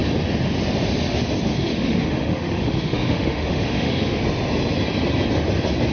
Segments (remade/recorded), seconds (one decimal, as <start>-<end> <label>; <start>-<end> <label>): 0.0-1.5 recorded; 1.5-4.2 remade; 4.2-5.9 recorded